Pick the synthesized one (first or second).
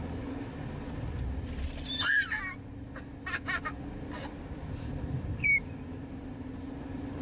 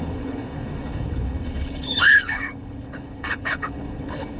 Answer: second